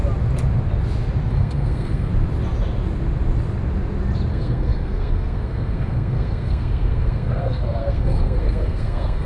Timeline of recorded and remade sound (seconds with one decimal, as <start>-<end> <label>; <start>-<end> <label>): 0.0-1.3 recorded; 1.3-2.1 remade; 2.1-4.3 recorded; 4.3-9.3 remade